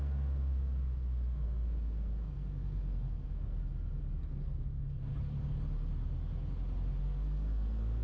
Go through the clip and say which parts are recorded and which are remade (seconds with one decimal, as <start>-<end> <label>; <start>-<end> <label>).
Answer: 0.0-3.6 remade; 3.6-4.3 recorded; 4.3-5.1 remade; 5.1-7.0 recorded; 7.0-8.0 remade